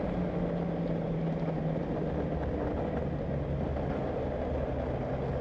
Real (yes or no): yes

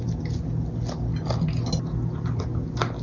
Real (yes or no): yes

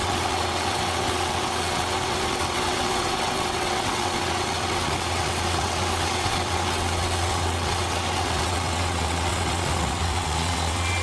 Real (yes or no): no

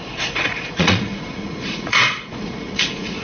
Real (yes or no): no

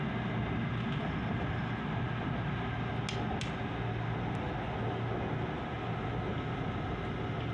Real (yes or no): yes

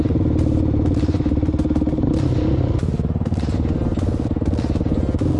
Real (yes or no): yes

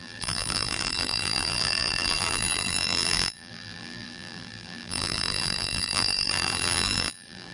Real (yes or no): no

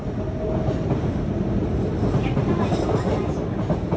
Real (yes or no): yes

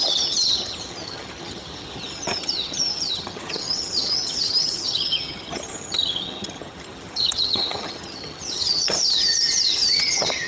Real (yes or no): no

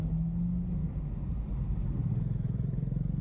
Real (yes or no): yes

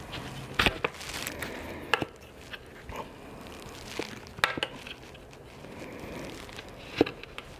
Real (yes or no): yes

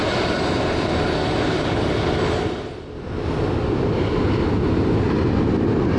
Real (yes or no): yes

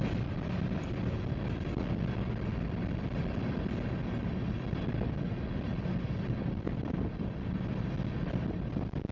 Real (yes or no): yes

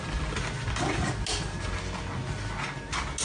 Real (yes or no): yes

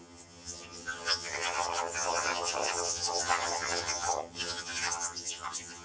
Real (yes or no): no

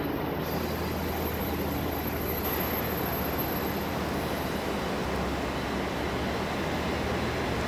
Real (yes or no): yes